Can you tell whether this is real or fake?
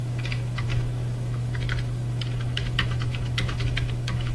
fake